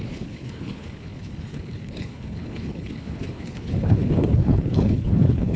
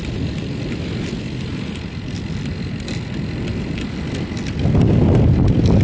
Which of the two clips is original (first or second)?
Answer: second